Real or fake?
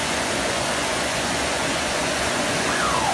fake